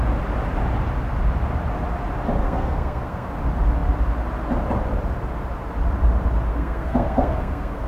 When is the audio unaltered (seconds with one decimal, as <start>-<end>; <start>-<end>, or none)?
0.0-2.4; 3.3-6.5

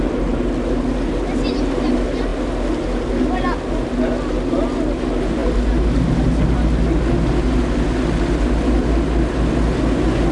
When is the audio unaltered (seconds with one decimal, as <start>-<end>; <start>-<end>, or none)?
0.0-10.3